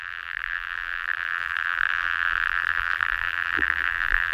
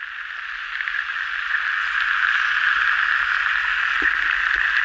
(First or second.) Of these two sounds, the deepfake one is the first